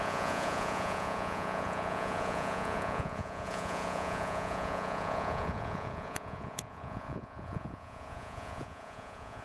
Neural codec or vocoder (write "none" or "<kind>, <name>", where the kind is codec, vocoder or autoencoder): vocoder, Vocos